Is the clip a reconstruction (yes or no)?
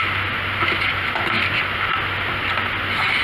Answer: no